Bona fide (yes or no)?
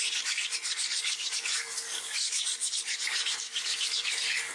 no